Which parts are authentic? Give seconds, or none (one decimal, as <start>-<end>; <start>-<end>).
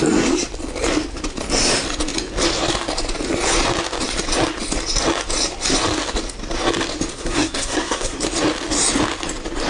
0.0-7.1; 8.2-9.7